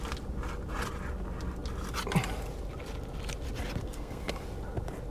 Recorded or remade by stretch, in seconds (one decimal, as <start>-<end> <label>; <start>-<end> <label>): 0.0-3.8 recorded; 3.8-4.3 remade; 4.3-5.1 recorded